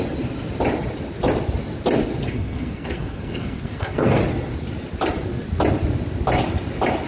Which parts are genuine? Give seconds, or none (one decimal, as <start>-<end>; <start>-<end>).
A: 0.0-2.3; 4.2-7.1